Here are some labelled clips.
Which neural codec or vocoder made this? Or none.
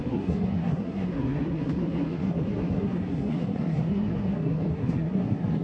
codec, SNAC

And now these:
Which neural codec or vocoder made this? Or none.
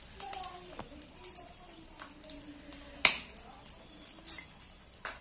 none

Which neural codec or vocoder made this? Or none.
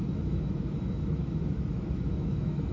autoencoder, DAC-VAE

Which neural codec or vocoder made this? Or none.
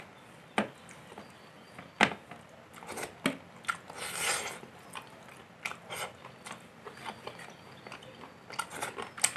none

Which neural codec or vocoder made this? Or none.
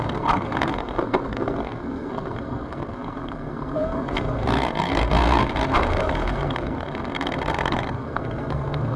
codec, SNAC